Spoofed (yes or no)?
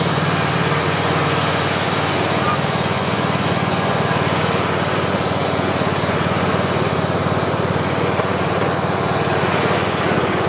yes